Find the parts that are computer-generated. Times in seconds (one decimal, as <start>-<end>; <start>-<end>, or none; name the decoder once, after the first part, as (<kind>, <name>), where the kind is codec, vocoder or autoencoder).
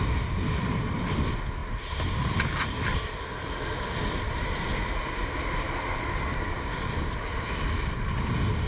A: none